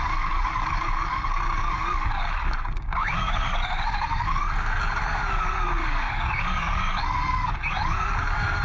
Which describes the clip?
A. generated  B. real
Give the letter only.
A